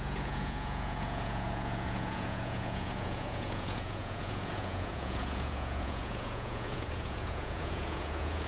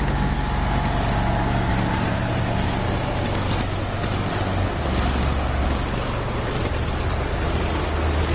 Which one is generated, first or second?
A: first